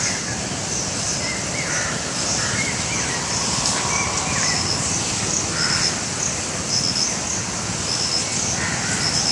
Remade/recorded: recorded